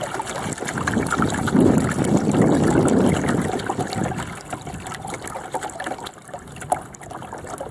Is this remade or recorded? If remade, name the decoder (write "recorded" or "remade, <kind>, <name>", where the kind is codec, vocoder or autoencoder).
recorded